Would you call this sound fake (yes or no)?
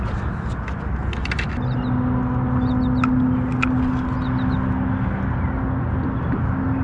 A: no